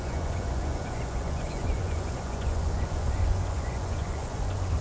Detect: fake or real fake